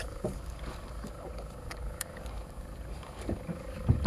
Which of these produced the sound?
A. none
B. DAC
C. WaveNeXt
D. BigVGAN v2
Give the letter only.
B